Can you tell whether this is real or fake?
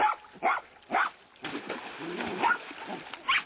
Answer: real